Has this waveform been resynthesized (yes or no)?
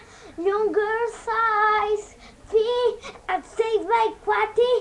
no